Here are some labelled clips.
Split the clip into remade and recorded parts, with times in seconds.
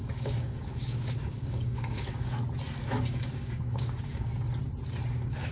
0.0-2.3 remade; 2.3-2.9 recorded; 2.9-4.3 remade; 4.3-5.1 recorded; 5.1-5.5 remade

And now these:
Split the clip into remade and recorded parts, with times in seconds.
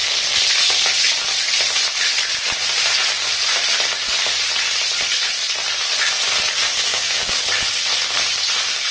0.0-6.9 recorded; 6.9-7.4 remade; 7.4-8.9 recorded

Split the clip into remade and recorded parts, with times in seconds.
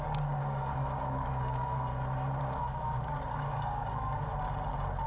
0.0-1.9 remade; 1.9-2.4 recorded; 2.4-4.3 remade; 4.3-5.1 recorded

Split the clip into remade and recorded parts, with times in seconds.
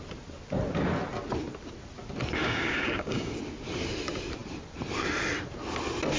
0.0-2.4 recorded; 2.4-3.3 remade; 3.3-6.2 recorded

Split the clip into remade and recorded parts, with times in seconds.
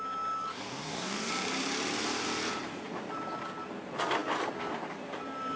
0.0-0.5 recorded; 0.5-1.3 remade; 1.3-5.6 recorded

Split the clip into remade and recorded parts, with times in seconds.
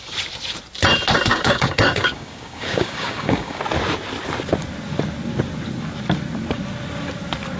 0.0-1.3 recorded; 1.3-3.6 remade; 3.6-7.6 recorded